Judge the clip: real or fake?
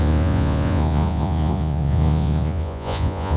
fake